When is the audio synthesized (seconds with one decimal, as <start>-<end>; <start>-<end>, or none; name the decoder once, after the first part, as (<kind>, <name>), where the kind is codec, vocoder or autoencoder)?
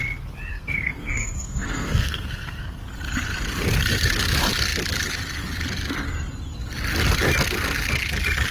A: 0.5-2.8 (codec, SNAC)